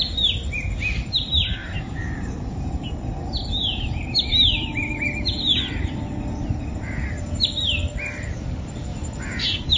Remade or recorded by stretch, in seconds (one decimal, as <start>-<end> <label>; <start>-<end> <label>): 0.0-1.6 recorded; 1.6-2.7 remade; 2.7-4.3 recorded; 4.3-5.0 remade; 5.0-8.9 recorded; 8.9-9.8 remade